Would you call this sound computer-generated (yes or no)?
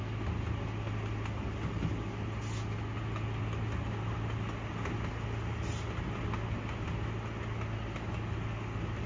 no